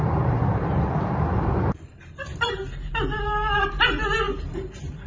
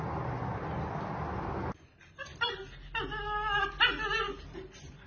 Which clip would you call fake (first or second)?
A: first